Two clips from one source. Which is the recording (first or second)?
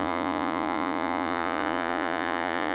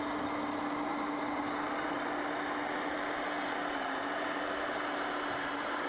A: second